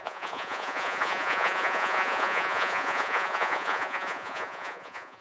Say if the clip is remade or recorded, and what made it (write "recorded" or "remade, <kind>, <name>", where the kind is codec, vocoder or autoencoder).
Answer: remade, vocoder, Vocos